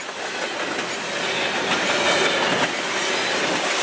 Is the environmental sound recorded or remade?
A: recorded